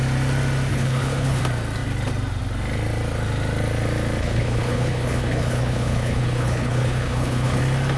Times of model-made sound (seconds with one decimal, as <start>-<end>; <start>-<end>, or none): 0.7-1.4; 4.2-7.6